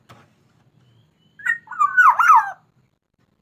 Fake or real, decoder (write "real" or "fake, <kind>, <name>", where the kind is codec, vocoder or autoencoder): real